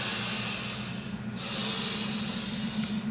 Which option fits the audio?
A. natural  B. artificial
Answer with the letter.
A